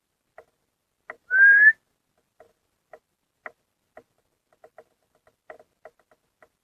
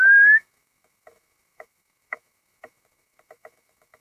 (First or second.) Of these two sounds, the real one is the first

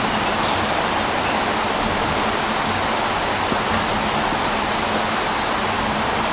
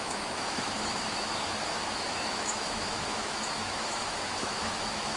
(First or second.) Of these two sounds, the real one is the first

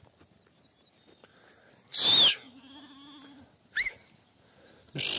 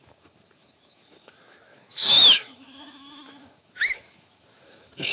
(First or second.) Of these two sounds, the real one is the first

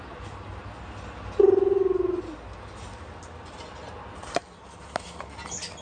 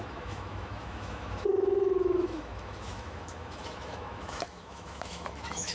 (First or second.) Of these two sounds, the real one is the first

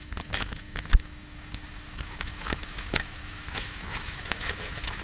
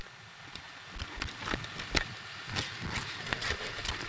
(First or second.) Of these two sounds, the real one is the second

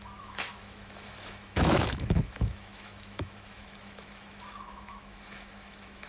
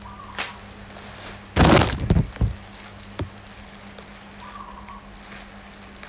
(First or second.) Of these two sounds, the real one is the second